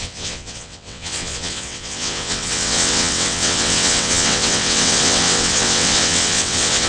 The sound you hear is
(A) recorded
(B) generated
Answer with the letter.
B